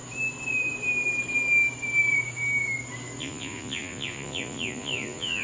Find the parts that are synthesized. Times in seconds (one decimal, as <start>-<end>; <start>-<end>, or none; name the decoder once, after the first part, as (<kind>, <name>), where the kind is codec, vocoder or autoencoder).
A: 3.2-5.4 (vocoder, Vocos)